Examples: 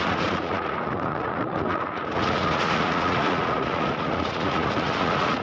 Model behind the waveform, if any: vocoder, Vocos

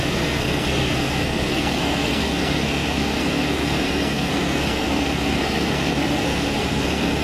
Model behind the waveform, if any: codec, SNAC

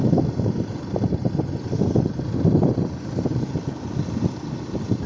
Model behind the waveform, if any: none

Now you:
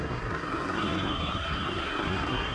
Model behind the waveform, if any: codec, SNAC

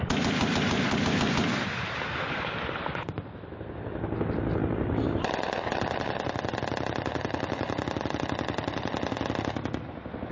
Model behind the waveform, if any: none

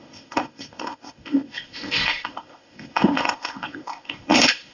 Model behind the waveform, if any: codec, ZipCodec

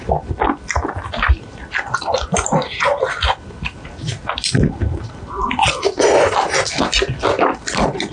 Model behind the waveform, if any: none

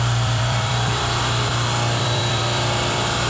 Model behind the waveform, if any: vocoder, BigVGAN v2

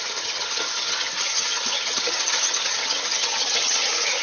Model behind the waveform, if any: vocoder, HiFi-GAN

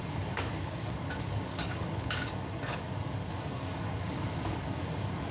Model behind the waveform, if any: codec, DAC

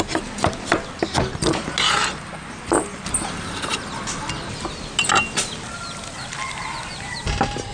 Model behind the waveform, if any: none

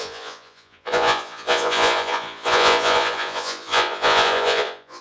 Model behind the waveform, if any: vocoder, Vocos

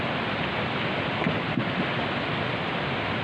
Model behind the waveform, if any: none